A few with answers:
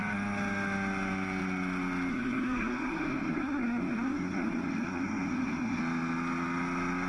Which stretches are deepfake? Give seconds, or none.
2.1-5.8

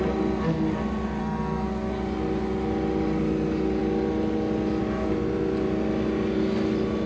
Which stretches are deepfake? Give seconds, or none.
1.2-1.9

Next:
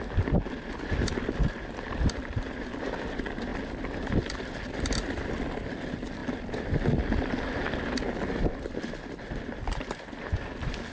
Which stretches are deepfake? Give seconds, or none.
none

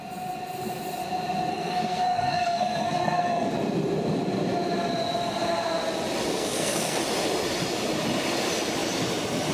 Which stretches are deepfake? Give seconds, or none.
1.5-3.5; 6.3-7.0

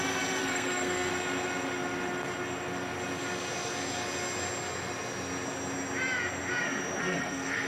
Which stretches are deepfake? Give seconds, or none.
0.4-1.1; 7.0-7.7